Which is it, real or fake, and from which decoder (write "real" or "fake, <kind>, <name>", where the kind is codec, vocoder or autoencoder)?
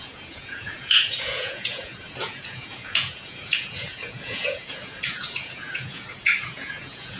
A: fake, vocoder, Vocos